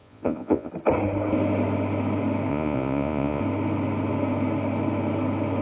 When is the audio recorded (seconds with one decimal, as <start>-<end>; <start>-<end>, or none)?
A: 0.7-2.5; 3.4-5.6